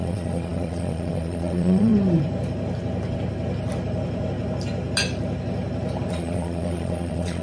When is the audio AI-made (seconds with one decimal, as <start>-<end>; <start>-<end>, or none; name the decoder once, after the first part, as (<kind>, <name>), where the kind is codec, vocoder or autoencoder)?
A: 0.0-1.9 (vocoder, Vocos); 6.1-7.4